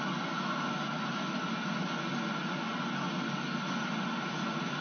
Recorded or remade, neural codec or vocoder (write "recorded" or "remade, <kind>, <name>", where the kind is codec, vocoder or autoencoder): recorded